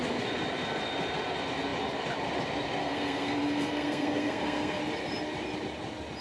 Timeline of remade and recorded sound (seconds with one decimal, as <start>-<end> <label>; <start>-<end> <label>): 0.0-2.8 recorded; 2.8-4.8 remade; 4.8-6.2 recorded